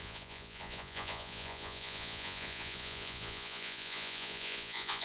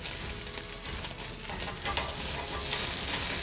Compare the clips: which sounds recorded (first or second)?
second